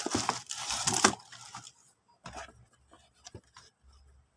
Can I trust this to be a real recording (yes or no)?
yes